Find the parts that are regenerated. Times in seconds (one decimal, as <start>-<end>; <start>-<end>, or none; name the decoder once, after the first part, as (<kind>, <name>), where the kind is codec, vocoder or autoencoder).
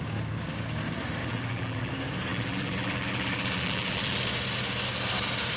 1.2-1.9 (vocoder, BigVGAN v2); 2.3-4.2